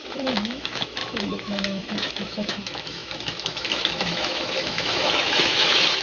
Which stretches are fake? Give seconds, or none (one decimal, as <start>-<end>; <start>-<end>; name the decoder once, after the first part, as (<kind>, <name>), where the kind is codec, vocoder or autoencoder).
0.0-6.0 (autoencoder, DAC-VAE)